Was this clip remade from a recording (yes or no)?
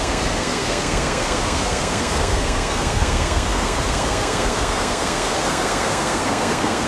yes